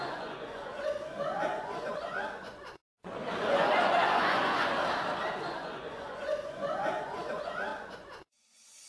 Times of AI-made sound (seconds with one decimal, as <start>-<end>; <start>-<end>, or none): 0.0-4.8; 5.3-8.9